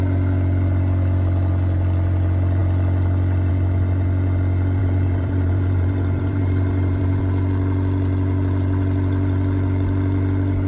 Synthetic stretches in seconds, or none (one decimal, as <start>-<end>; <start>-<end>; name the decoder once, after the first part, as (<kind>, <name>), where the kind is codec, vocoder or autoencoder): 4.8-7.2 (vocoder, BigVGAN v2)